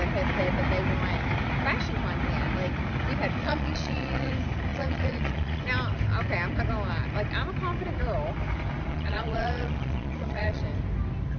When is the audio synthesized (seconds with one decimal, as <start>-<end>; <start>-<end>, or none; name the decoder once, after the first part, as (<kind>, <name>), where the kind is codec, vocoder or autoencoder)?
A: 3.4-4.3 (vocoder, Vocos); 4.7-5.6; 8.9-10.6